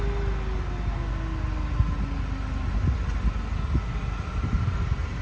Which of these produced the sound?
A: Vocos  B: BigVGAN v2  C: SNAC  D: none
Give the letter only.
D